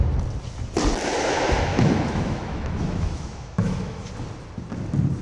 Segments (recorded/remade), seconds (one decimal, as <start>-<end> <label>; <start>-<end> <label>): 0.0-1.7 recorded; 1.7-4.1 remade; 4.1-5.2 recorded